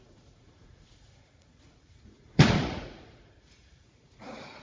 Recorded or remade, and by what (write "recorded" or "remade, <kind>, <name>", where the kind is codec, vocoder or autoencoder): remade, vocoder, Vocos